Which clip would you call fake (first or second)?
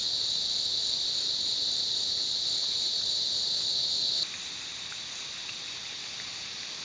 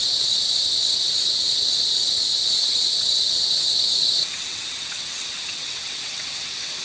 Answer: second